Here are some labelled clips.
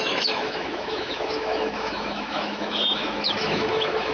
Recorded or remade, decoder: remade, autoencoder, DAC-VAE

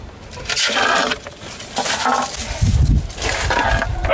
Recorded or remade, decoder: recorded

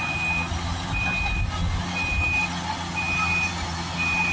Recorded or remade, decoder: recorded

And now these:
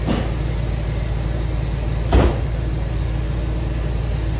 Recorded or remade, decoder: recorded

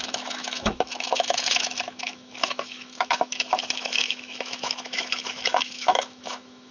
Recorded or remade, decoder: remade, autoencoder, DAC-VAE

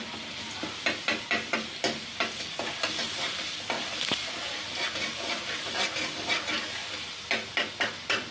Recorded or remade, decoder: recorded